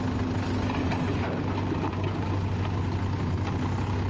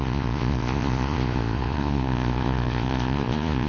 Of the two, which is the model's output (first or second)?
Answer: second